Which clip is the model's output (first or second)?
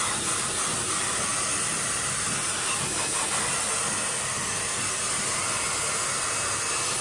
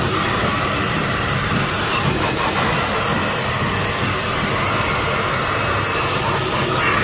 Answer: second